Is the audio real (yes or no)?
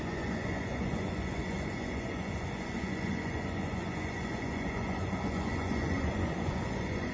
no